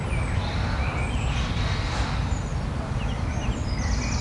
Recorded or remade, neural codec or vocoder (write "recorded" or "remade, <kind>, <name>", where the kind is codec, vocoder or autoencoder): recorded